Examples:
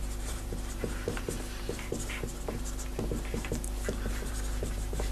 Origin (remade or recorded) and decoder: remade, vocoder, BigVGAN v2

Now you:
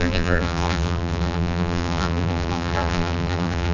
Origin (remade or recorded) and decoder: remade, vocoder, BigVGAN v2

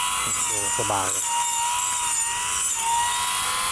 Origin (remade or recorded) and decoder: recorded